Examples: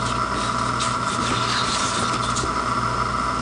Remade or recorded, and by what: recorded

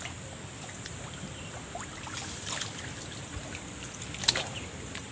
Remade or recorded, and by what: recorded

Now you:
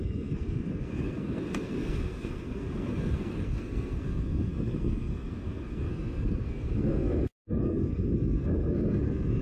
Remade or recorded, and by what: remade, codec, SNAC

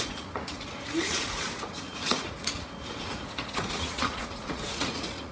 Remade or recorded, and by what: remade, vocoder, Vocos